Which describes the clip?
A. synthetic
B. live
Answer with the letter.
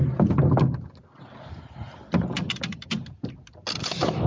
B